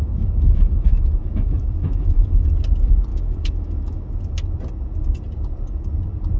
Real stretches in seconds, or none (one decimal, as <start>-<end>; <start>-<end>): 2.5-3.1; 4.1-6.4